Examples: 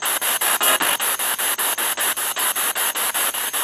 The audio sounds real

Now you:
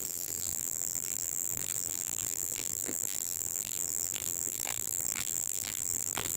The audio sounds fake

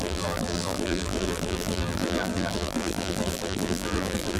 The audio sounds fake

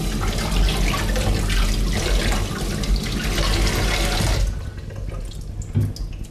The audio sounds real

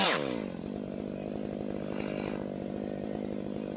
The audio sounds real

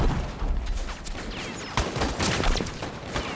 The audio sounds real